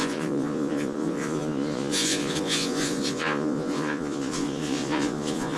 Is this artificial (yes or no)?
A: yes